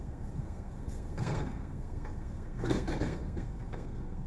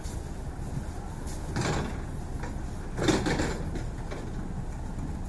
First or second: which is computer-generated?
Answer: first